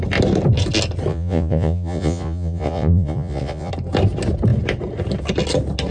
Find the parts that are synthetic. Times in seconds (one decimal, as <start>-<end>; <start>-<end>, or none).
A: 1.1-3.7